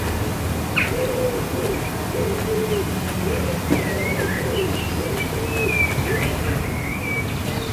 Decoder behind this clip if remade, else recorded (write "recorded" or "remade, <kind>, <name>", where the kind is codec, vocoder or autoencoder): recorded